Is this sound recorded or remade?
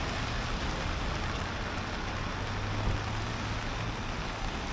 recorded